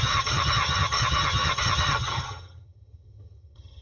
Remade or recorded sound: remade